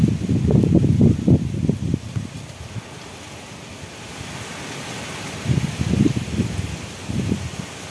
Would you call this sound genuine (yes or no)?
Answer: yes